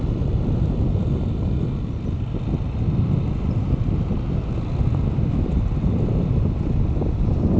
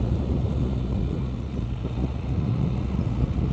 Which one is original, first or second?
first